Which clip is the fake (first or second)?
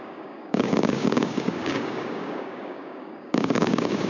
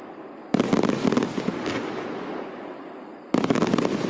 first